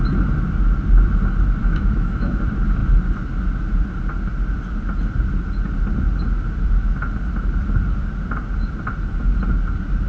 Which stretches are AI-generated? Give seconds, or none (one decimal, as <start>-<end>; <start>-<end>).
1.6-2.4